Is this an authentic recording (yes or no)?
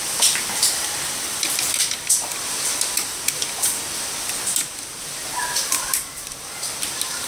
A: no